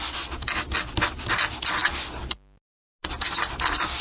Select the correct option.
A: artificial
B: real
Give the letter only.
B